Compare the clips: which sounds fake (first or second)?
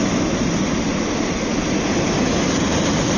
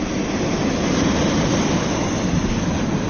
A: second